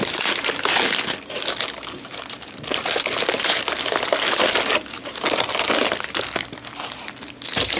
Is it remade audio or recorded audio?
recorded